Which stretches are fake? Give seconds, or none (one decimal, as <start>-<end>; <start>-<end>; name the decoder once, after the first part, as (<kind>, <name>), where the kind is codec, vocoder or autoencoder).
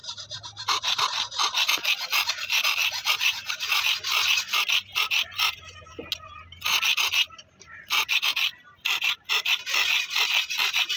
none